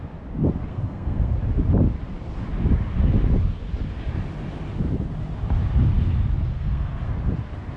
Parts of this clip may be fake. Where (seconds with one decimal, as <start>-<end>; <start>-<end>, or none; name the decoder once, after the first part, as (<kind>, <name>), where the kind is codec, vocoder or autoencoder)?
0.7-1.3 (codec, SNAC); 6.5-7.1